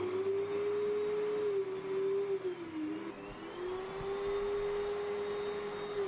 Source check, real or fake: real